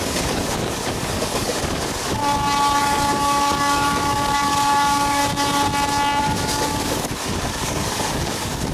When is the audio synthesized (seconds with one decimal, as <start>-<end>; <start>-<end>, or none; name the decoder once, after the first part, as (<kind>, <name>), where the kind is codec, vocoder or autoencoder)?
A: 0.0-2.2 (codec, DAC); 2.8-5.2; 6.2-8.7